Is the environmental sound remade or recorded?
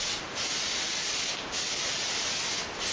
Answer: recorded